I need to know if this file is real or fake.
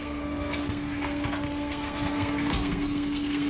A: fake